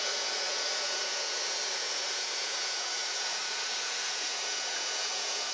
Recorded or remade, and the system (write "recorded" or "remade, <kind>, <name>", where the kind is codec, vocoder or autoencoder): remade, vocoder, Vocos